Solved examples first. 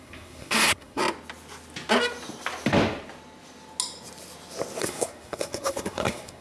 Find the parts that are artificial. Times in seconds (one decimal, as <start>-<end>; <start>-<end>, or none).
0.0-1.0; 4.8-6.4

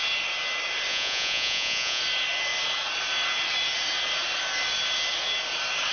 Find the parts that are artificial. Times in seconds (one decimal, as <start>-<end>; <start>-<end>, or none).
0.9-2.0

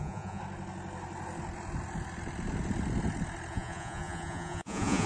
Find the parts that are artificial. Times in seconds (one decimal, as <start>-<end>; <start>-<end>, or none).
0.0-0.4; 3.5-5.1